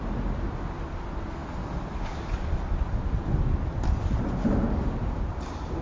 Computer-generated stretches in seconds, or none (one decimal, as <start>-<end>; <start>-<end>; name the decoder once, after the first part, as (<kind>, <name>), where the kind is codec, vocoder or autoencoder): none